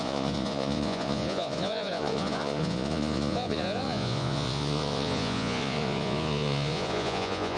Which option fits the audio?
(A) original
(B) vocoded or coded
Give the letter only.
B